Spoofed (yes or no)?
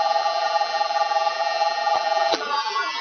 yes